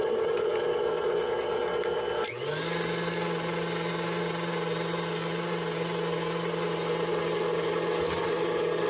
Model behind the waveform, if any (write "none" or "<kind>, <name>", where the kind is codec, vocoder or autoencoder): none